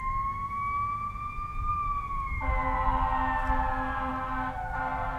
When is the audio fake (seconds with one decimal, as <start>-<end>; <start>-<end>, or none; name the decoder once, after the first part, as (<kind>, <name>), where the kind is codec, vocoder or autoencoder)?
none

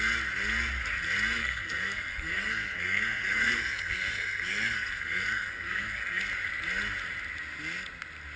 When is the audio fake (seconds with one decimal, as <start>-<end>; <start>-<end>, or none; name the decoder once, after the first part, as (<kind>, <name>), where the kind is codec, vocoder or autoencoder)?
1.4-6.2 (codec, SNAC)